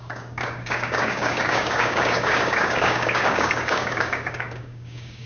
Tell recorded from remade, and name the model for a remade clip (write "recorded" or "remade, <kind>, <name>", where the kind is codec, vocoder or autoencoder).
remade, codec, DAC